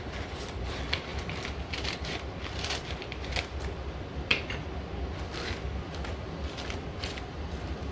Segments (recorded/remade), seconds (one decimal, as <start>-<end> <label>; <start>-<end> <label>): 0.0-7.9 recorded